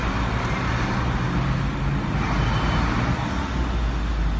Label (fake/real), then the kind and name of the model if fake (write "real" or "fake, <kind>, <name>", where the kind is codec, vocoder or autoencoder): real